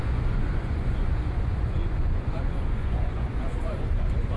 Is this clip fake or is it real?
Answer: fake